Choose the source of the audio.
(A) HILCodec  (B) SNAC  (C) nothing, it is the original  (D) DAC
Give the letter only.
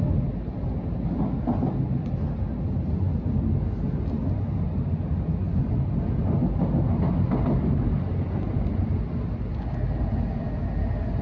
C